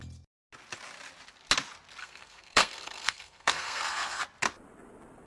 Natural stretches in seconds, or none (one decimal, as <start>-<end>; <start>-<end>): 0.0-2.0; 4.2-5.3